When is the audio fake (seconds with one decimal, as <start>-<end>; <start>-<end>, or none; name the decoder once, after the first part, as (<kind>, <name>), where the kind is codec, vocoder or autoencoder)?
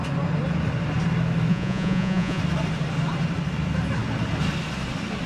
1.5-2.4 (vocoder, Vocos)